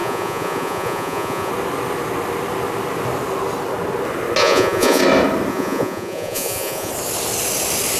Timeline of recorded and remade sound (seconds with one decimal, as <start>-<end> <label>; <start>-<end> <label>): 0.0-1.5 remade; 1.5-4.4 recorded; 4.4-5.0 remade; 5.0-5.5 recorded; 5.5-6.9 remade; 6.9-8.0 recorded